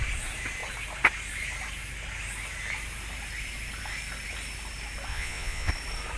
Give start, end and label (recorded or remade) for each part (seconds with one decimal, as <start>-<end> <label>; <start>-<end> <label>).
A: 0.0-5.1 recorded; 5.1-5.7 remade; 5.7-6.2 recorded